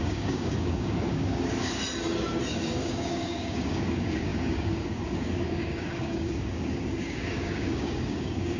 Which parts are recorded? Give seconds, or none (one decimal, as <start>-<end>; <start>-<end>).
1.8-2.5